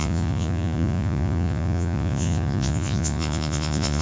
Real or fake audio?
fake